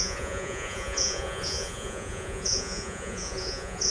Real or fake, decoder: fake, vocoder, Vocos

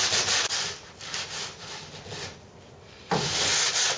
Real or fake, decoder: real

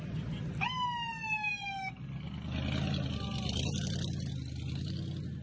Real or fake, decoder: real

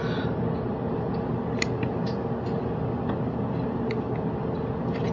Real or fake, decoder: real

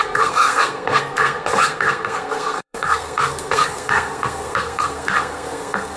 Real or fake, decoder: fake, codec, SNAC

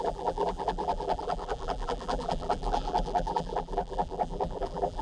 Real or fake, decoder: fake, vocoder, BigVGAN v2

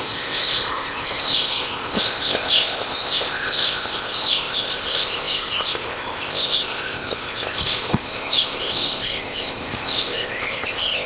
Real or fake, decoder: fake, codec, ZipCodec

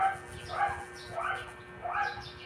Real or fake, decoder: real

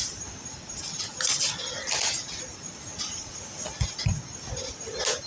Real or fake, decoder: real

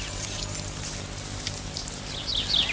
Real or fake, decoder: real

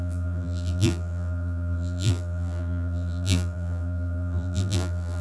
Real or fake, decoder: fake, vocoder, BigVGAN v2